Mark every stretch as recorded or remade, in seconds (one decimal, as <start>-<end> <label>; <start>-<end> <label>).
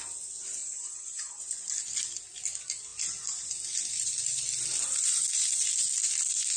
0.0-0.6 recorded; 0.6-1.4 remade; 1.4-6.6 recorded